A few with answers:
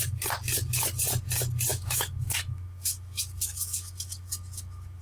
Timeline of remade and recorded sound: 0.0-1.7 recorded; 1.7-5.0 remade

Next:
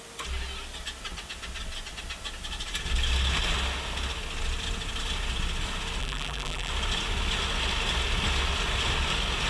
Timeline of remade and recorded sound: 0.0-6.0 recorded; 6.0-6.7 remade; 6.7-9.5 recorded

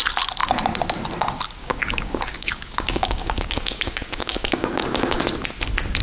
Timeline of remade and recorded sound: 0.0-1.6 recorded; 1.6-5.2 remade; 5.2-6.0 recorded

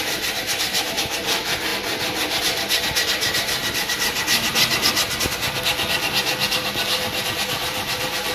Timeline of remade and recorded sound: 0.0-8.3 recorded

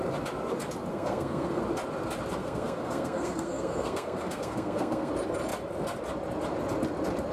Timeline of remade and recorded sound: 0.0-0.9 recorded; 0.9-1.6 remade; 1.6-2.4 recorded; 2.4-5.1 remade; 5.1-7.3 recorded

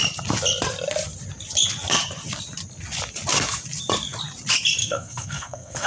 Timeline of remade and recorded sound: 0.0-4.8 recorded; 4.8-5.9 remade

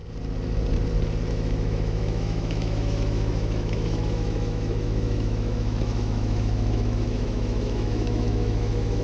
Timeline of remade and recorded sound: 0.0-1.3 recorded; 1.3-9.0 remade

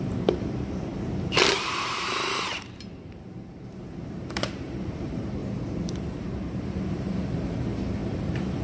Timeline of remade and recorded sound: 0.0-8.6 remade